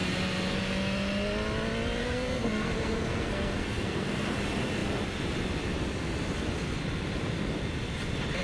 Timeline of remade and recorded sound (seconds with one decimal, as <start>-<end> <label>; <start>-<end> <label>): 0.0-2.0 recorded; 2.0-4.3 remade; 4.3-8.4 recorded

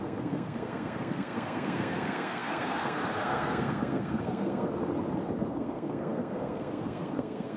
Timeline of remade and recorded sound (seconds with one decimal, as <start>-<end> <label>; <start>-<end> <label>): 0.0-4.7 remade; 4.7-5.4 recorded; 5.4-7.6 remade

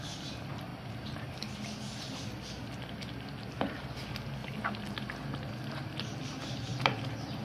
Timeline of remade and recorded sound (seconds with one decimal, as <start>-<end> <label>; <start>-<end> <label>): 0.0-0.7 recorded; 0.7-2.5 remade; 2.5-4.4 recorded; 4.4-6.2 remade; 6.2-6.7 recorded; 6.7-7.4 remade

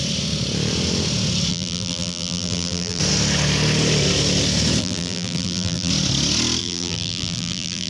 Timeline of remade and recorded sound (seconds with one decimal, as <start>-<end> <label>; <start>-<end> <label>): 0.0-1.5 recorded; 1.5-3.0 remade; 3.0-4.8 recorded; 4.8-5.9 remade; 5.9-6.6 recorded; 6.6-7.9 remade

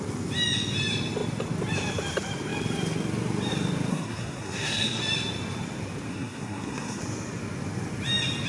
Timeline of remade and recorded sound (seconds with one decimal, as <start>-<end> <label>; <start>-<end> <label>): 0.0-3.9 recorded; 3.9-5.0 remade; 5.0-6.1 recorded; 6.1-7.0 remade; 7.0-8.5 recorded

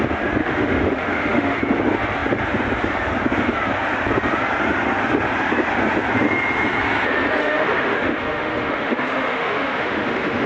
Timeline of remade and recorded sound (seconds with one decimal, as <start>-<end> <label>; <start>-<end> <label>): 0.0-0.4 recorded; 0.4-1.6 remade; 1.6-7.4 recorded; 7.4-10.5 remade

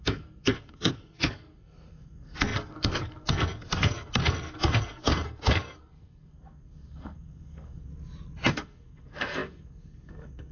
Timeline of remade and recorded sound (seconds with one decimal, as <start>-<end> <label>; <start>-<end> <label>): 0.0-7.9 remade; 7.9-8.5 recorded; 8.5-10.5 remade

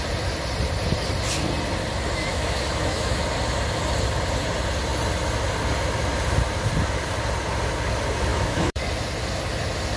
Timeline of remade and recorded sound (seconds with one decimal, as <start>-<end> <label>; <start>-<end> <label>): 0.0-2.3 recorded; 2.3-3.2 remade; 3.2-8.3 recorded; 8.3-8.8 remade; 8.8-10.0 recorded